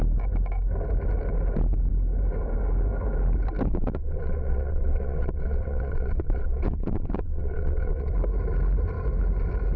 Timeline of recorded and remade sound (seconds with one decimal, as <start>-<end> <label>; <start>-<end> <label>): 0.0-3.7 recorded; 3.7-8.1 remade; 8.1-9.8 recorded